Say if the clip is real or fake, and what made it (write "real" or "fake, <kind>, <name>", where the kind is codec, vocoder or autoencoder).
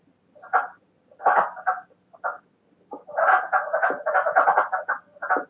real